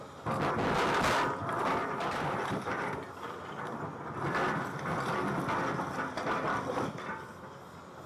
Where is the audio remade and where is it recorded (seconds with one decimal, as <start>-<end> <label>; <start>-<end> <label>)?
0.0-1.8 recorded; 1.8-3.1 remade; 3.1-8.1 recorded